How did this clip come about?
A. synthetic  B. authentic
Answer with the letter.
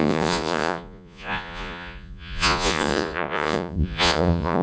A